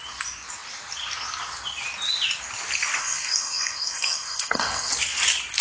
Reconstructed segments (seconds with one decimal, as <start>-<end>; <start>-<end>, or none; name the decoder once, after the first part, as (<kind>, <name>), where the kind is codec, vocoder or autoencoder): 3.0-4.9 (codec, SNAC)